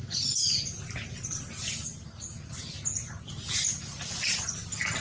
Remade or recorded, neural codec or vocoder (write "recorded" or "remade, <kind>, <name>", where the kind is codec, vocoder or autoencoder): recorded